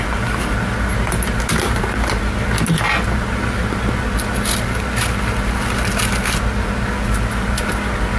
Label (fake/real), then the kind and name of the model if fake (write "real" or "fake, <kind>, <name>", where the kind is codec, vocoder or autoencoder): real